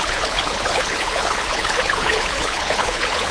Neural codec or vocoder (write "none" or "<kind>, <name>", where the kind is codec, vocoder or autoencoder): codec, HILCodec